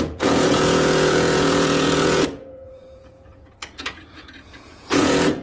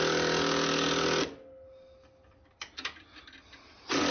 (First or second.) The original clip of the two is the second